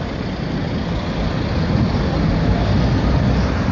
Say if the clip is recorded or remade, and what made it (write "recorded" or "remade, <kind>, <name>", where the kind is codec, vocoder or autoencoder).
recorded